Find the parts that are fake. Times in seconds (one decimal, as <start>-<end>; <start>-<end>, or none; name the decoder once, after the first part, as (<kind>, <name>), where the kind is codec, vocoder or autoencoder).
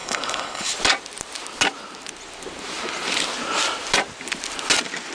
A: 0.0-0.7 (codec, HILCodec)